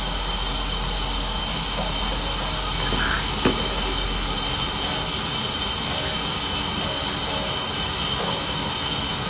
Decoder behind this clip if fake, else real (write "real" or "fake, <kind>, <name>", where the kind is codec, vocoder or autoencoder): real